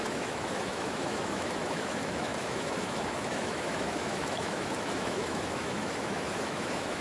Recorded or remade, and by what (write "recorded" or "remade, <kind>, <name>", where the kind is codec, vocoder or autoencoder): remade, autoencoder, DAC-VAE